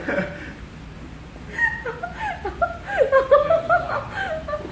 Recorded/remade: recorded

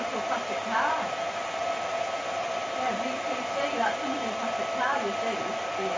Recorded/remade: recorded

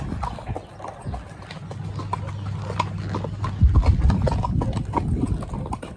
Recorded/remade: recorded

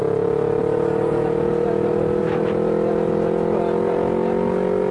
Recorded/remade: recorded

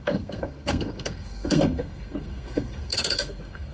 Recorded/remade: remade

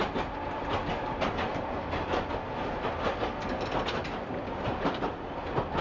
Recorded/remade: recorded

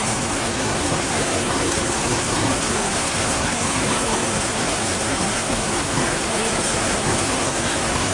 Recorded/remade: remade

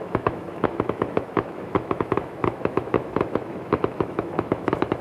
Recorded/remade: remade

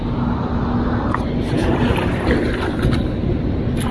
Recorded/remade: recorded